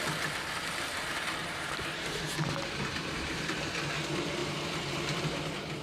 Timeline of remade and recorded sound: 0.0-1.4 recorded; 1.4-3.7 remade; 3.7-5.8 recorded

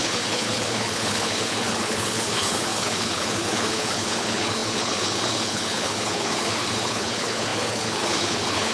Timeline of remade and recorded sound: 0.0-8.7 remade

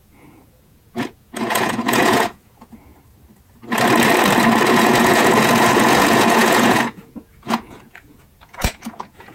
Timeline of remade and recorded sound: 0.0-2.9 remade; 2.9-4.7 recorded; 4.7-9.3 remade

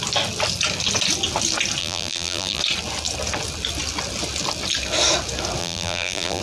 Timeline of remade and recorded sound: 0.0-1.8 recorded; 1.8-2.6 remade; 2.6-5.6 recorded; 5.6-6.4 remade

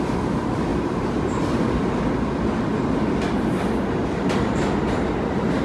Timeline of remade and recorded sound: 0.0-0.7 recorded; 0.7-2.0 remade; 2.0-5.6 recorded

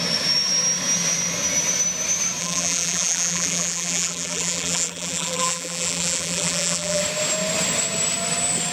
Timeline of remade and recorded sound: 0.0-2.4 recorded; 2.4-7.0 remade; 7.0-8.7 recorded